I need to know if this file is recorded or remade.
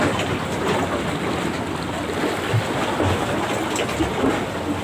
recorded